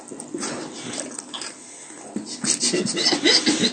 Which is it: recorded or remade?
recorded